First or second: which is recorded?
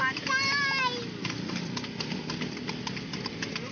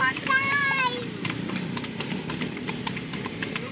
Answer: first